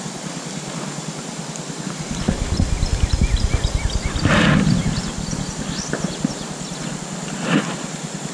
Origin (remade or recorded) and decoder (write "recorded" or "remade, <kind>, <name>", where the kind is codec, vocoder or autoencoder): recorded